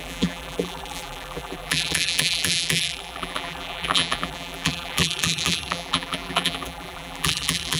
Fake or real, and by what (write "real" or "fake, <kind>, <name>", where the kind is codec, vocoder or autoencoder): fake, vocoder, BigVGAN v2